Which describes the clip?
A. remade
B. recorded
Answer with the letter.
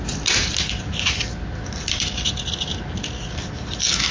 B